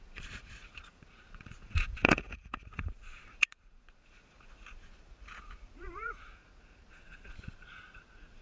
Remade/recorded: remade